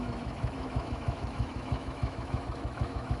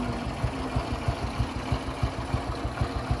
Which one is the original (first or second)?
second